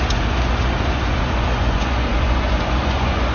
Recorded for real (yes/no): no